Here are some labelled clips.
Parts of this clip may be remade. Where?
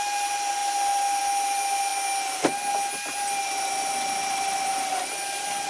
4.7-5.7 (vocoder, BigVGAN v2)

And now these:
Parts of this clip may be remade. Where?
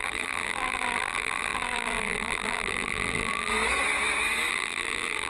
0.0-3.5 (vocoder, BigVGAN v2); 4.5-5.3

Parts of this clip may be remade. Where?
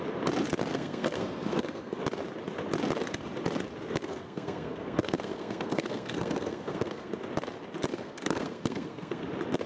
0.7-2.0 (codec, SNAC); 4.0-7.1; 7.9-9.2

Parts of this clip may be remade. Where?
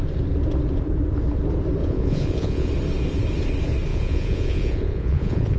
1.8-2.7 (vocoder, Vocos); 3.9-5.6